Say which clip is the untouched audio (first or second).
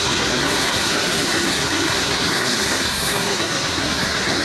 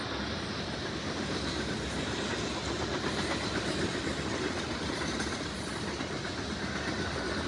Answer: second